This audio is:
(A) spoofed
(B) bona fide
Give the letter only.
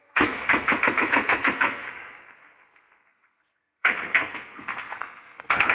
A